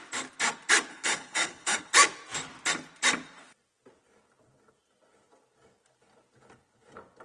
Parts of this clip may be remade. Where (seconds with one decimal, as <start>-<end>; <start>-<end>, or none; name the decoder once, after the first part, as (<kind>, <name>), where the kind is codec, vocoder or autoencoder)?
0.9-1.9 (codec, HILCodec)